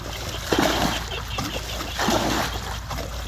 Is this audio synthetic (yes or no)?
no